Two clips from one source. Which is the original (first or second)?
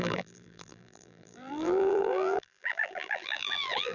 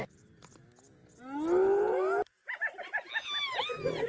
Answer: second